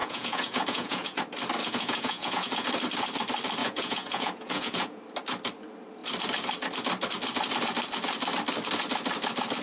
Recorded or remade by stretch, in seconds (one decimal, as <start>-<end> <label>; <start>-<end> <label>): 0.0-1.2 remade; 1.2-1.6 recorded; 1.6-2.7 remade; 2.7-3.6 recorded; 3.6-5.0 remade; 5.0-9.6 recorded